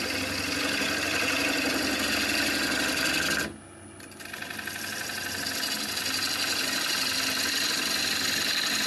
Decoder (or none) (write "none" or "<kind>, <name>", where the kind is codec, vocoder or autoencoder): none